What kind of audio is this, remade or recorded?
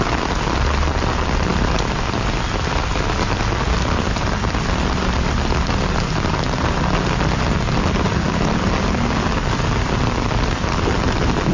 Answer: recorded